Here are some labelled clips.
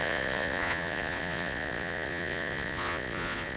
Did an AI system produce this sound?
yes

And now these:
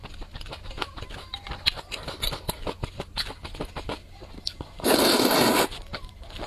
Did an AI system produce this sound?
no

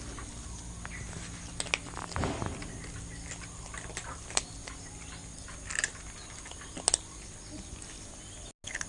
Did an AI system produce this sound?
no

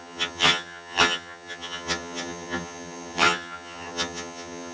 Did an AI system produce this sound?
yes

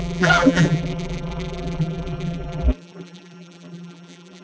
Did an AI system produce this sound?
yes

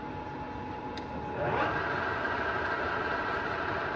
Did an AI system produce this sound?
no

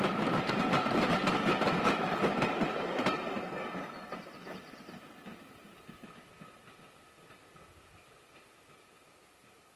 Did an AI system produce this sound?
no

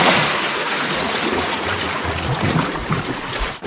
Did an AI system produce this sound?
yes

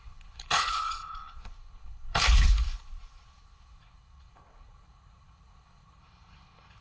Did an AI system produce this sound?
yes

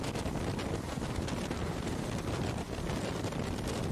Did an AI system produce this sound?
no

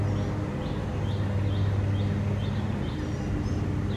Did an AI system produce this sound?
no